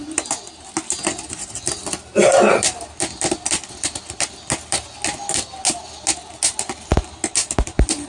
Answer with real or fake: real